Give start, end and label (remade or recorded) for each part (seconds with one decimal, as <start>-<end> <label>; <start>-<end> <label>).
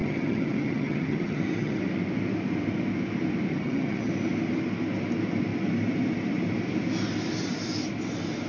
0.0-1.8 remade; 1.8-3.5 recorded; 3.5-4.1 remade; 4.1-8.5 recorded